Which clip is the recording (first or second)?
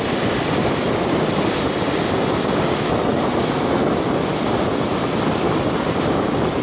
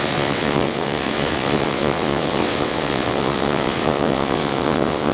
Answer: first